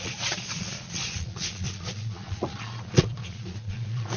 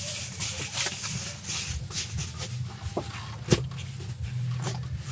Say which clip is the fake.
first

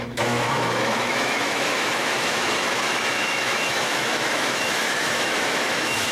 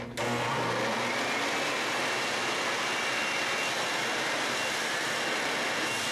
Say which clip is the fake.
first